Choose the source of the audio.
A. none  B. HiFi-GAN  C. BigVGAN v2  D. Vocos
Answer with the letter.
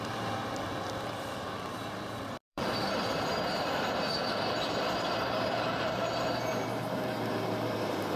C